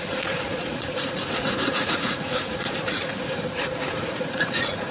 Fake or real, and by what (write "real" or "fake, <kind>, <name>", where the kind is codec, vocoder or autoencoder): fake, vocoder, Vocos